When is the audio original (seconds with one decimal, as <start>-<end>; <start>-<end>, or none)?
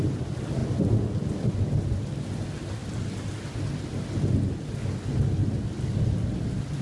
0.0-6.8